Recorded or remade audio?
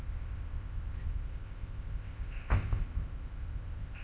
remade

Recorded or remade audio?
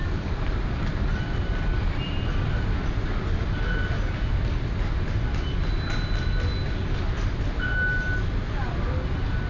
recorded